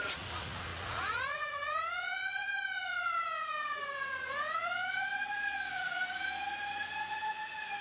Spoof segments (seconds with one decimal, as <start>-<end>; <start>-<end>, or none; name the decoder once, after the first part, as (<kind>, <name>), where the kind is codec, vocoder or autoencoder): 0.0-7.8 (vocoder, Vocos)